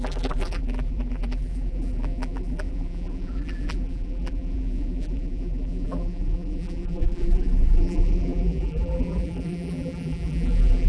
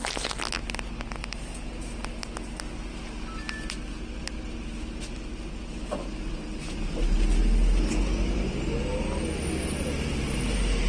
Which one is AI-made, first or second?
first